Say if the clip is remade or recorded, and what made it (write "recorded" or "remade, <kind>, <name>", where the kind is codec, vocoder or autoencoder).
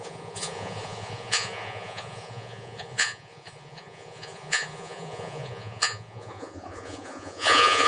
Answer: remade, vocoder, Vocos